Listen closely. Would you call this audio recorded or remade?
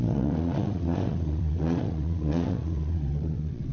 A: remade